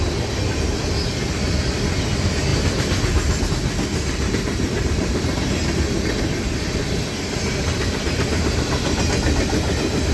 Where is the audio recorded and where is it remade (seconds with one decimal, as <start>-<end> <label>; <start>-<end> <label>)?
0.0-3.9 recorded; 3.9-9.0 remade; 9.0-10.1 recorded